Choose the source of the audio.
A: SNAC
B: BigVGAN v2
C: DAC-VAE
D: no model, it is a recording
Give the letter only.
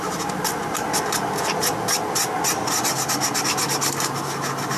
D